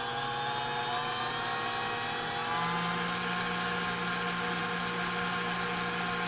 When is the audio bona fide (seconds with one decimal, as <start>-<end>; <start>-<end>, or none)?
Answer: 0.0-6.3